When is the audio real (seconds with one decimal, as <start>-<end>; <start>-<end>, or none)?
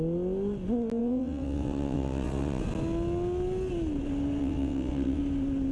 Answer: 0.0-1.0; 2.6-4.4; 5.2-5.7